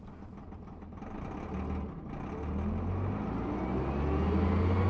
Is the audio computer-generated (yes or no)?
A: no